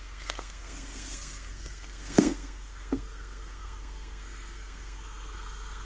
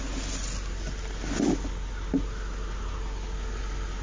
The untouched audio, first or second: second